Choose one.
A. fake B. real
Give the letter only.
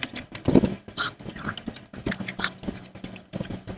B